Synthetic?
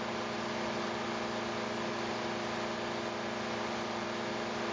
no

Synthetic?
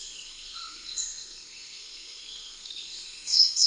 yes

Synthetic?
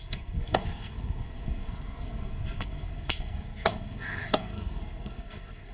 yes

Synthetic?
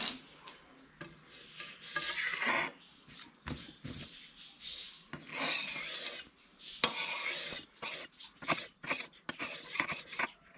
no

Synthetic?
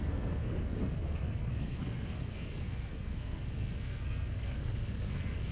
yes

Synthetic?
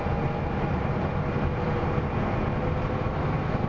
no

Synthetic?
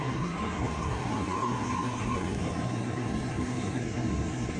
yes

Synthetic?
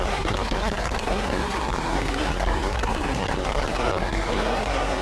yes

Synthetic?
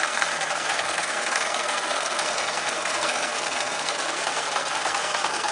yes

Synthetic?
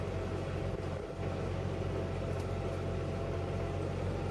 no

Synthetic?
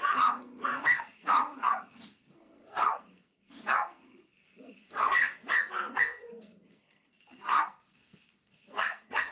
yes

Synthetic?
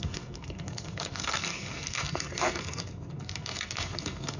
yes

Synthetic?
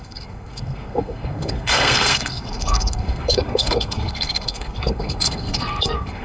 yes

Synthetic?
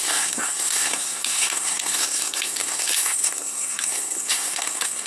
yes